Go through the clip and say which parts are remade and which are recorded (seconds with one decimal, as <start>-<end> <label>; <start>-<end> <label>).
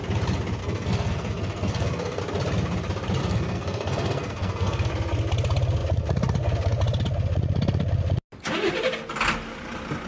0.0-0.6 recorded; 0.6-2.2 remade; 2.2-3.2 recorded; 3.2-4.9 remade; 4.9-10.1 recorded